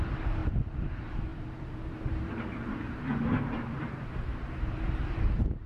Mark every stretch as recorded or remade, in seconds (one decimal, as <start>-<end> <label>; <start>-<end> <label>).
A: 0.0-5.7 remade